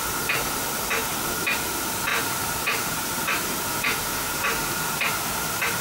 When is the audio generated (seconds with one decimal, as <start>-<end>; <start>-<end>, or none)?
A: 2.1-5.8

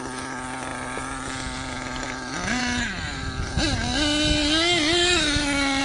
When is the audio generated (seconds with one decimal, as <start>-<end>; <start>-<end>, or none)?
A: none

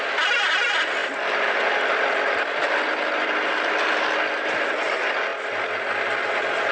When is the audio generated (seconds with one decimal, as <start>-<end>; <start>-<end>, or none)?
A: 1.0-4.7

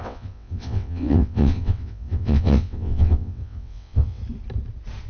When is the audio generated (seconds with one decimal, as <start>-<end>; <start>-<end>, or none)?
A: 0.0-4.2

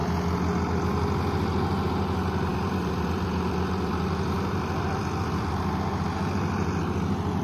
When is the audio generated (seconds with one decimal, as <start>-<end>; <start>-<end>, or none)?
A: 2.5-5.5

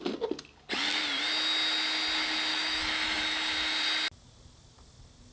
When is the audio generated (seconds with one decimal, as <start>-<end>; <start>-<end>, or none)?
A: 2.5-3.2

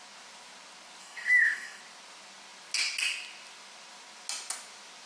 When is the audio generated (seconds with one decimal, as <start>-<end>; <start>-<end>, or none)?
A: 1.0-1.8

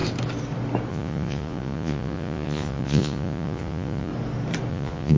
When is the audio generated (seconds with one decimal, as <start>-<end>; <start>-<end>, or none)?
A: 0.9-4.1; 4.7-5.2